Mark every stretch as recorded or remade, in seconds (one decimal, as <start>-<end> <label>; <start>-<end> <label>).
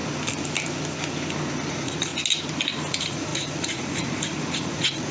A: 0.0-1.7 recorded; 1.7-2.1 remade; 2.1-2.9 recorded; 2.9-5.1 remade